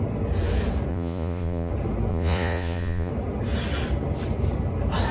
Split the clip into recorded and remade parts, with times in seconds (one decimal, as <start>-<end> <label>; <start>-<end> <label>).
0.0-0.9 recorded; 0.9-1.7 remade; 1.7-2.1 recorded; 2.1-3.1 remade; 3.1-5.1 recorded